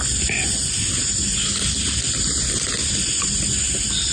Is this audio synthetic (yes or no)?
no